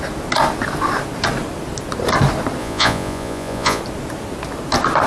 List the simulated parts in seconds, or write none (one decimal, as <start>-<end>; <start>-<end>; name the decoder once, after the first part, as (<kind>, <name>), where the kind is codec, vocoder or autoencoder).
2.6-3.8 (vocoder, Vocos)